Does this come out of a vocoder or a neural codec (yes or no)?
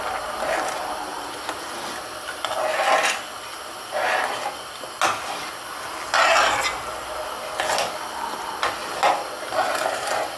no